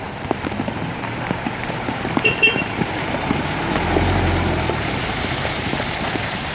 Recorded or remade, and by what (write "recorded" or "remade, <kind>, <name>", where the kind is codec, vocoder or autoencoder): remade, vocoder, BigVGAN v2